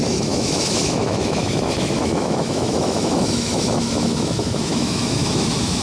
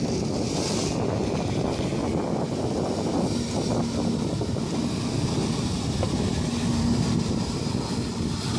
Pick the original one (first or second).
second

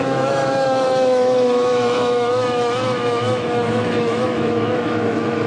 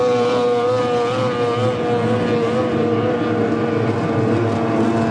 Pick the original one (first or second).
second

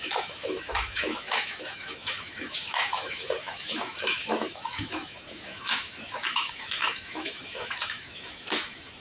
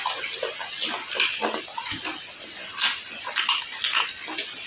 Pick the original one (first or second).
second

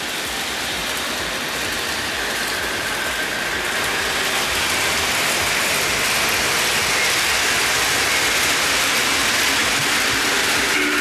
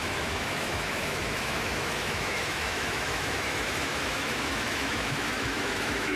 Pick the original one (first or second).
first